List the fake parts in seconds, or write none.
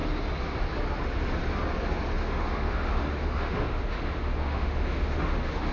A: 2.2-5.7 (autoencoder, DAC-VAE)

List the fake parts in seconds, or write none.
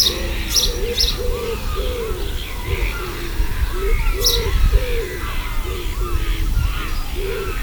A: 0.0-3.5 (vocoder, BigVGAN v2); 4.7-7.6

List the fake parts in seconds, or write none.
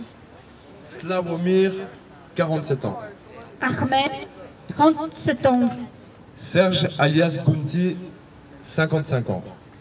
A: 0.4-1.2 (autoencoder, DAC-VAE); 3.6-5.3; 7.1-8.5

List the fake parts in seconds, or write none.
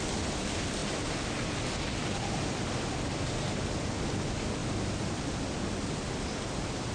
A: 4.6-6.0 (vocoder, BigVGAN v2)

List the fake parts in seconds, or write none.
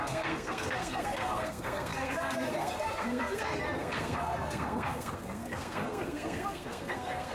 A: 0.0-7.3 (codec, SNAC)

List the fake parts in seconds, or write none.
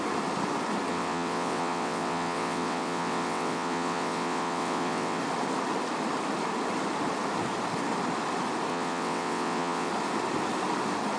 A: 0.9-5.2 (vocoder, WaveNeXt); 8.7-9.9